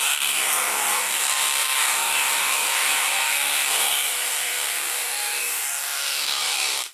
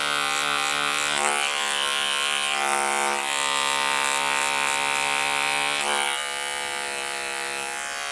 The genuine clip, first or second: second